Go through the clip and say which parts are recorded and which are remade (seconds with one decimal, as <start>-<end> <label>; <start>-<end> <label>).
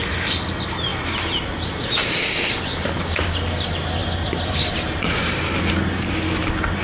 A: 0.0-4.0 recorded; 4.0-5.7 remade; 5.7-6.8 recorded